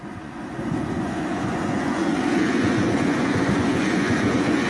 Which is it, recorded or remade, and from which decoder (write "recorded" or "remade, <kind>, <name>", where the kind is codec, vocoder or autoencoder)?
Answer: remade, vocoder, Vocos